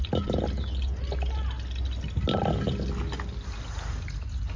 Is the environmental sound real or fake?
real